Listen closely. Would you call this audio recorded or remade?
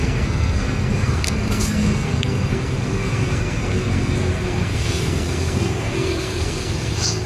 remade